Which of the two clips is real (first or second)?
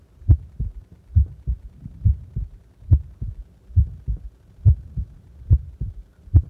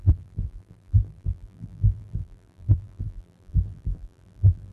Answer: first